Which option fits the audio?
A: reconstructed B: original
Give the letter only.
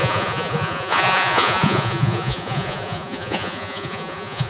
A